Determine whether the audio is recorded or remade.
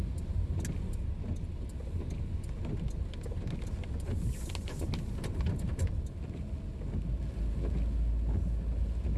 recorded